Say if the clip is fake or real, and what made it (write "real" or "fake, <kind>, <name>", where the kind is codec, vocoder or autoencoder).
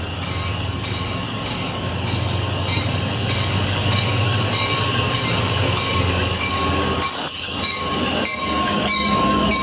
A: fake, codec, DAC